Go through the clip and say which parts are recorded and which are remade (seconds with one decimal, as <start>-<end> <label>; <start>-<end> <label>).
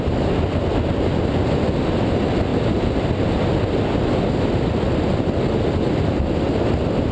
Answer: 0.0-7.1 recorded